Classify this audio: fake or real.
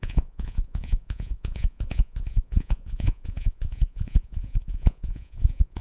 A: fake